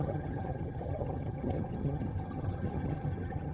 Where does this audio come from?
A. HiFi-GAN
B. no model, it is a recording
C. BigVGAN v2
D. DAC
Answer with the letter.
A